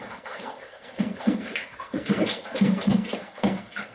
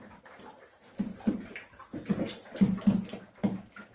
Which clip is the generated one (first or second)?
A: first